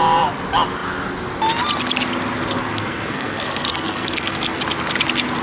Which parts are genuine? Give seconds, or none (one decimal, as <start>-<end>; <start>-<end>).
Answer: 0.0-2.7; 4.6-5.4